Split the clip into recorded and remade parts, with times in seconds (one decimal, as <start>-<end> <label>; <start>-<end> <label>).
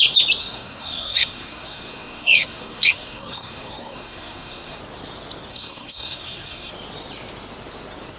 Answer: 0.0-0.4 recorded; 0.4-4.8 remade; 4.8-5.5 recorded; 5.5-6.7 remade; 6.7-8.2 recorded